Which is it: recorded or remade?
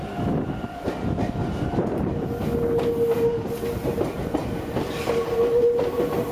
recorded